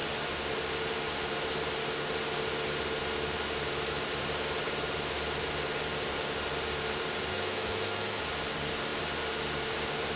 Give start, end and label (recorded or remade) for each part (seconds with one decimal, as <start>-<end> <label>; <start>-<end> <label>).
0.0-7.3 recorded; 7.3-8.2 remade; 8.2-10.2 recorded